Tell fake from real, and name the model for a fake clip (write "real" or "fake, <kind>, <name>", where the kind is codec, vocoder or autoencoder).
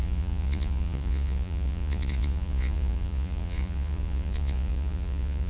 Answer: fake, vocoder, Vocos